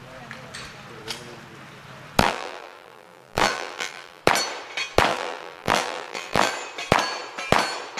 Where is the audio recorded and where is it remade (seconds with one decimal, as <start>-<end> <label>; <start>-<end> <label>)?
0.0-2.2 recorded; 2.2-4.2 remade; 4.2-5.1 recorded; 5.1-6.5 remade; 6.5-8.0 recorded